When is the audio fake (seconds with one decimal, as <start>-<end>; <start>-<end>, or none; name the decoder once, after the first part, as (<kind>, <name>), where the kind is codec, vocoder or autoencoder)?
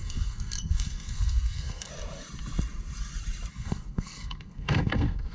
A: 0.0-1.9 (codec, SNAC); 3.5-5.3